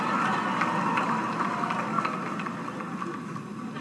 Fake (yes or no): no